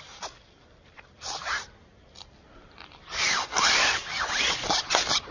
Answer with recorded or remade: recorded